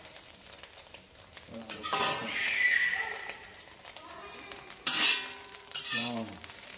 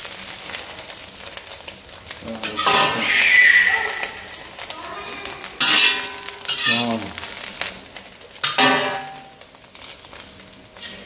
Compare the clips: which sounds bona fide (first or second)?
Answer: second